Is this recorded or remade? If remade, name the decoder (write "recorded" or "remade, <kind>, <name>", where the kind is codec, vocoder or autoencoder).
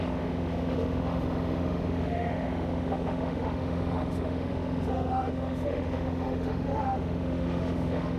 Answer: remade, autoencoder, DAC-VAE